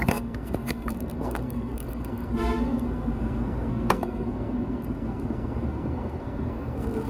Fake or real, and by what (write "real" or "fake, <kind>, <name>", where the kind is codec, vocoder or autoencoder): fake, codec, SNAC